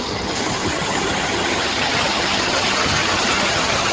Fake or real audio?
fake